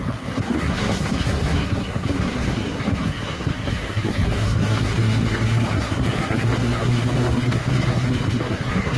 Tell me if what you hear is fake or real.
fake